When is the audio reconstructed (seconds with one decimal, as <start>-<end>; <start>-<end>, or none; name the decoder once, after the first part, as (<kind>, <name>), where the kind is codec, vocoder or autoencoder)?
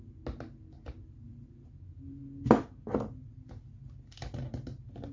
none